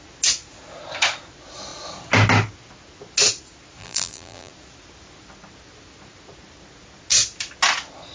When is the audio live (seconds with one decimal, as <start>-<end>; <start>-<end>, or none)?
0.0-3.8; 4.5-8.1

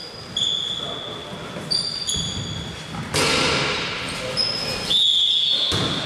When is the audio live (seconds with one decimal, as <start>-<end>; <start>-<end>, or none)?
0.0-6.1

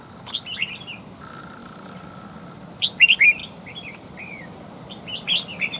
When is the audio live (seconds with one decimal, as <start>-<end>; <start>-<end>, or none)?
0.0-1.6; 2.2-3.4; 4.7-5.8

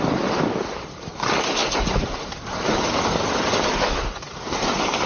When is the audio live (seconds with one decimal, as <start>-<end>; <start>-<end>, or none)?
0.0-5.1

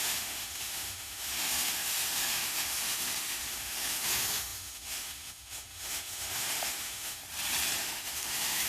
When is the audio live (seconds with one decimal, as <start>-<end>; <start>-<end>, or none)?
7.2-7.8